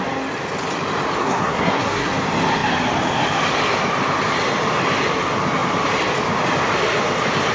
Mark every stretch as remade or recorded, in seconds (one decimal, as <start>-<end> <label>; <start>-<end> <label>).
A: 0.0-1.2 recorded; 1.2-2.1 remade; 2.1-7.5 recorded